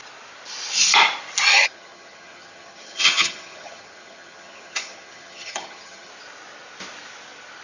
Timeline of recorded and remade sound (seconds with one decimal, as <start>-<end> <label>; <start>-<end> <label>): 0.0-1.5 recorded; 1.5-6.1 remade; 6.1-7.6 recorded